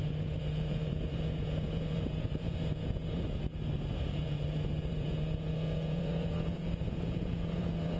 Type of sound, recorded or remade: remade